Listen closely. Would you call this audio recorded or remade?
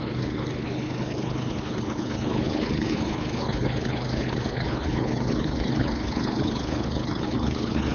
remade